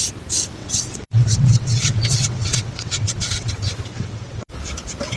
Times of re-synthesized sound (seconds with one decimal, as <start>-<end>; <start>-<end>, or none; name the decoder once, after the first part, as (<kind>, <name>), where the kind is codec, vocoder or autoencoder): 0.6-3.5 (vocoder, WaveNeXt); 3.9-4.5